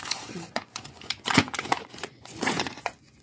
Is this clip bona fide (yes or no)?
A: no